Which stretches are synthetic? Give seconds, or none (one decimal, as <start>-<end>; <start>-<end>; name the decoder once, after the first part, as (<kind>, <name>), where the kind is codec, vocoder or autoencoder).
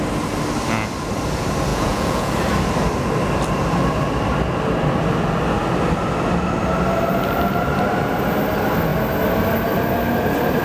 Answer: 1.7-2.3 (vocoder, Vocos)